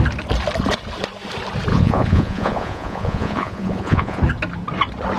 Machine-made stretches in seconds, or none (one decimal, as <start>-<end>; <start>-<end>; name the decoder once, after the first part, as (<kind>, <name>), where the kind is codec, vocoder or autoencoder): 1.7-4.2 (vocoder, Vocos)